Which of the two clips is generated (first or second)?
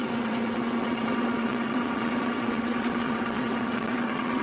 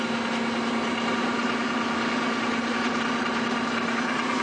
first